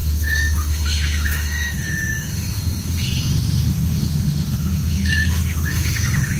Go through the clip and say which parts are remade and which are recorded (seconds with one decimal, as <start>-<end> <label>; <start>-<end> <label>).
0.0-6.4 remade

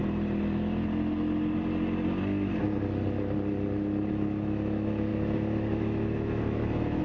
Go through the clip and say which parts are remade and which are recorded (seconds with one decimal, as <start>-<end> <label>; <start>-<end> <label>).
0.0-4.1 recorded; 4.1-7.0 remade

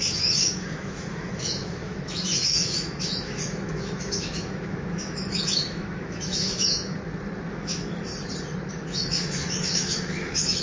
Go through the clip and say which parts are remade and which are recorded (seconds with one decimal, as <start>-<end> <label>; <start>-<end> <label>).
0.0-6.9 remade; 6.9-7.5 recorded; 7.5-8.1 remade; 8.1-8.7 recorded; 8.7-10.6 remade

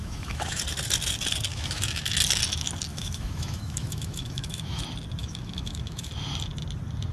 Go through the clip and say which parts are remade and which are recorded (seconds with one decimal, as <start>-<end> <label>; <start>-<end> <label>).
0.0-0.6 remade; 0.6-1.5 recorded; 1.5-2.1 remade; 2.1-2.9 recorded; 2.9-4.8 remade; 4.8-5.2 recorded; 5.2-6.1 remade; 6.1-7.1 recorded